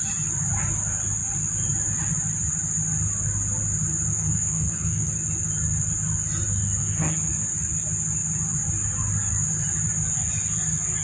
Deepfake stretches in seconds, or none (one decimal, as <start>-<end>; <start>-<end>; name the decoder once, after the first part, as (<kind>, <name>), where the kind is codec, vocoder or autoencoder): 4.1-5.1 (codec, SNAC); 6.8-7.3